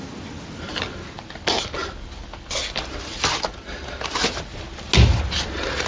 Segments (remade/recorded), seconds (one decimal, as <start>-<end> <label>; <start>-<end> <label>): 0.0-5.9 recorded